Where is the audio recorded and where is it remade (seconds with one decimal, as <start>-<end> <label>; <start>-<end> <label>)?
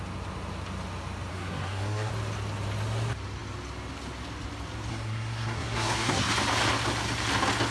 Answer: 0.0-1.3 recorded; 1.3-2.1 remade; 2.1-4.9 recorded; 4.9-6.3 remade; 6.3-7.7 recorded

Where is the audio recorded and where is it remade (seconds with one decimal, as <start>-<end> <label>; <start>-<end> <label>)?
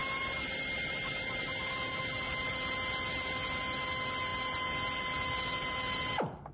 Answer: 0.0-6.5 recorded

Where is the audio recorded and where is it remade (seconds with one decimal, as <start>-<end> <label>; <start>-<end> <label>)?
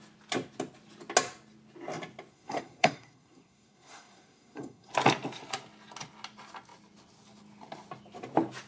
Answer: 0.0-2.3 recorded; 2.3-4.9 remade; 4.9-8.7 recorded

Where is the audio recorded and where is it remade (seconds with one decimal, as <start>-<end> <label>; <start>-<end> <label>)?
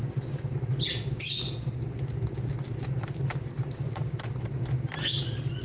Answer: 0.0-5.6 recorded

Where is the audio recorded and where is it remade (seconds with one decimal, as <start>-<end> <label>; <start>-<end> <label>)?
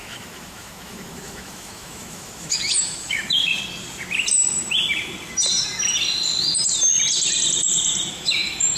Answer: 0.0-3.5 remade; 3.5-8.1 recorded; 8.1-8.8 remade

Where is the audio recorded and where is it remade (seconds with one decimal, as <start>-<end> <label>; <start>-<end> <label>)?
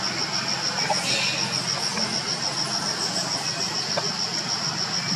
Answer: 0.0-5.2 recorded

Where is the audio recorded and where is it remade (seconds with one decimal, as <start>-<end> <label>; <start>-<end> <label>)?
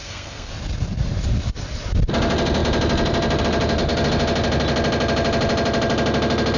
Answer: 0.0-0.5 remade; 0.5-6.6 recorded